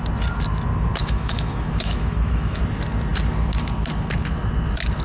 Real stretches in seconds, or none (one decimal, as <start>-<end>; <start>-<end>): 0.0-1.0; 2.6-5.0

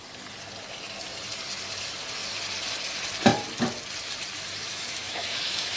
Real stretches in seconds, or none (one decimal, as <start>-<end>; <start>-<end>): 0.0-4.6

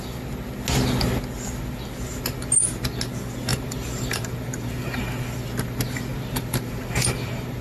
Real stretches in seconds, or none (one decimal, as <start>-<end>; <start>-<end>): 0.0-3.5; 5.0-6.1

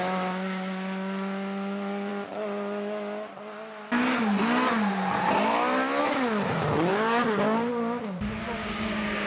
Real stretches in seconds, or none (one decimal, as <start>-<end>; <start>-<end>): 0.0-8.6